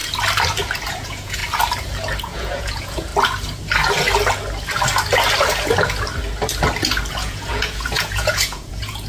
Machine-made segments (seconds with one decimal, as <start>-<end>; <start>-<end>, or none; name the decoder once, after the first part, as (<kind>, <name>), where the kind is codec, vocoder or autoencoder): 0.9-1.4 (vocoder, Vocos); 2.2-3.1; 7.1-9.1